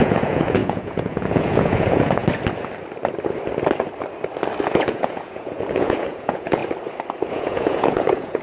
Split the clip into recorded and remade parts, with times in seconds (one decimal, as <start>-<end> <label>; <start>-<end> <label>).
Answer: 0.0-2.2 remade; 2.2-4.7 recorded; 4.7-6.6 remade; 6.6-7.3 recorded; 7.3-8.4 remade